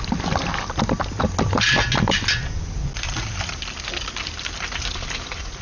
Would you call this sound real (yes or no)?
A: yes